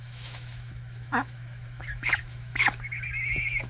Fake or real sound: fake